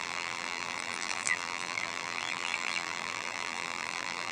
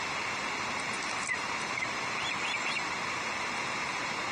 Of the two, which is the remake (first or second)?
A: first